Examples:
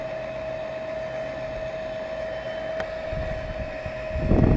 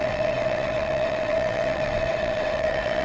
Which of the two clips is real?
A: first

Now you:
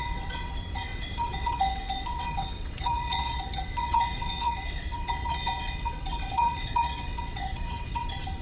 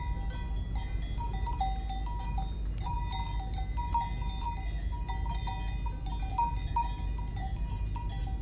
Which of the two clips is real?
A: second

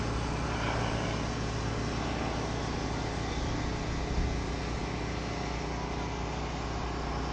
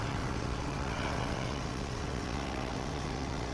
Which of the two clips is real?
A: first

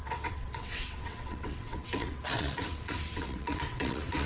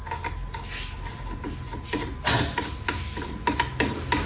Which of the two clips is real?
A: second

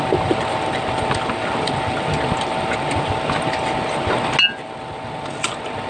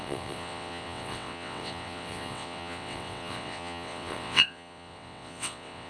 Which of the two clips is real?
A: first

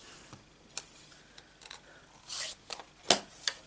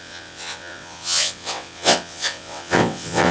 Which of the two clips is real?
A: first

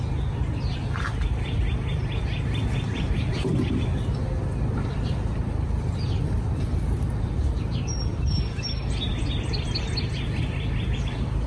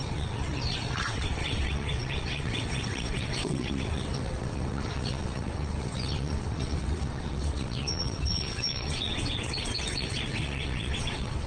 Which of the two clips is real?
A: first